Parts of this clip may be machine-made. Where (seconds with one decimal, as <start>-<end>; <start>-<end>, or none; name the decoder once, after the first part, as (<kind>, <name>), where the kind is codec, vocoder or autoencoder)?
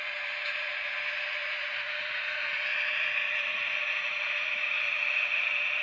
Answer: 0.0-5.8 (vocoder, BigVGAN v2)